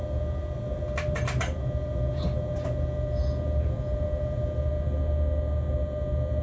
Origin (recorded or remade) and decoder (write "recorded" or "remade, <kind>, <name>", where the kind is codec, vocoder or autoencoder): recorded